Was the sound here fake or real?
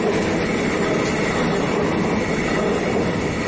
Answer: real